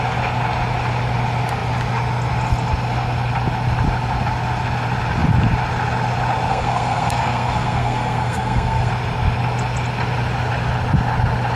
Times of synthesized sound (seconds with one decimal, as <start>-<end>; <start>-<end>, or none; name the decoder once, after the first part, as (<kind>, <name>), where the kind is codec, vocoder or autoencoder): 6.5-8.9 (codec, SNAC)